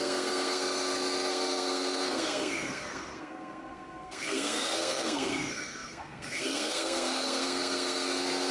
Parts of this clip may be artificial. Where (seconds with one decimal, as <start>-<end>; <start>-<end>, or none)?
0.0-8.5